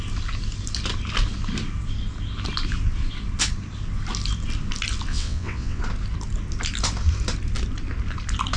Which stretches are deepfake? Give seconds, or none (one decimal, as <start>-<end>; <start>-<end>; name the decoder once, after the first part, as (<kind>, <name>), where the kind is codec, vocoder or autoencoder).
5.1-5.8 (vocoder, WaveNeXt)